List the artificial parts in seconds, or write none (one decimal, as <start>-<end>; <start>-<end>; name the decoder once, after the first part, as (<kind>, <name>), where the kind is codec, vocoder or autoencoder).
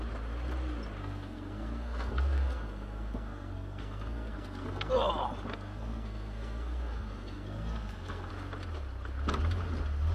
1.0-4.9 (codec, SNAC); 5.5-8.3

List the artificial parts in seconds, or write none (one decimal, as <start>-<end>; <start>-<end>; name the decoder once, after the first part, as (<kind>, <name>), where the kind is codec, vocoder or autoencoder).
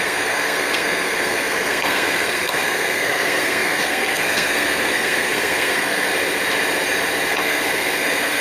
0.0-6.1 (codec, SNAC); 7.3-8.4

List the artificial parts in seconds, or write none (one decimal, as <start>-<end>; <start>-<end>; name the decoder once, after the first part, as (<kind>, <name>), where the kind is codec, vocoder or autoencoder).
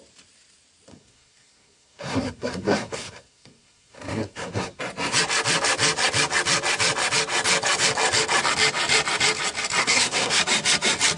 0.9-4.8 (codec, SNAC); 9.8-10.4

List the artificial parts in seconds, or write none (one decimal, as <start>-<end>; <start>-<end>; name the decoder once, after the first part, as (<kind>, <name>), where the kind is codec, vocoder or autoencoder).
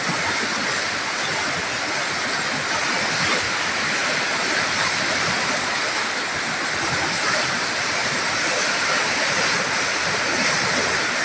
none